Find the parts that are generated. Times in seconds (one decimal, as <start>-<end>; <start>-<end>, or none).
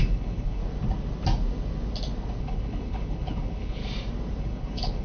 0.0-0.6; 2.4-3.8; 4.4-5.0